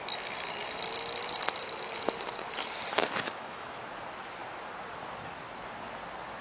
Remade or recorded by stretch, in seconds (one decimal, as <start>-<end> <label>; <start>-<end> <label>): 0.0-2.9 recorded; 2.9-3.8 remade; 3.8-6.4 recorded